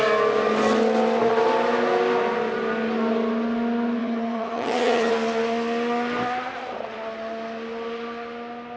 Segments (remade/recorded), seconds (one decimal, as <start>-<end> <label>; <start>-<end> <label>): 0.0-4.0 recorded; 4.0-5.1 remade; 5.1-8.8 recorded